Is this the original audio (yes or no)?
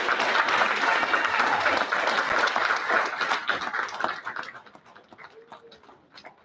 yes